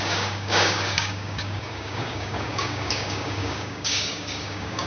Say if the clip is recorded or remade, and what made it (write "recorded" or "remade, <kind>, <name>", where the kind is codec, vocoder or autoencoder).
remade, codec, DAC